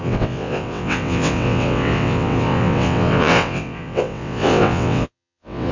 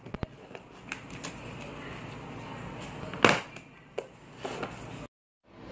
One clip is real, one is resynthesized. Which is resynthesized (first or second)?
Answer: first